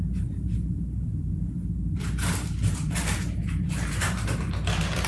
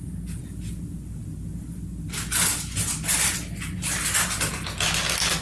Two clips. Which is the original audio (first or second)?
second